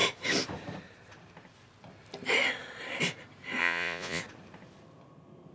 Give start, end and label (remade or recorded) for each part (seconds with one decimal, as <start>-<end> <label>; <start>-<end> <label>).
0.0-3.6 recorded; 3.6-4.2 remade; 4.2-5.5 recorded